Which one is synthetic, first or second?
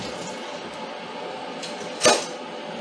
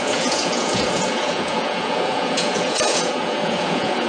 second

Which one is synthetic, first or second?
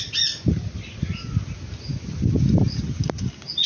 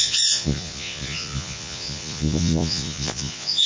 second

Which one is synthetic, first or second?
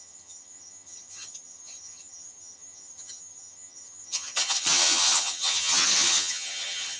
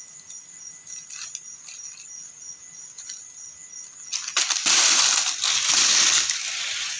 first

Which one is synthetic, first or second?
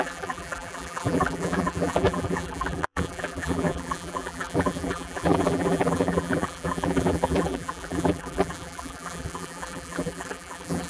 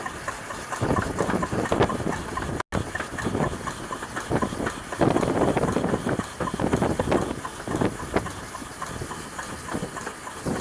first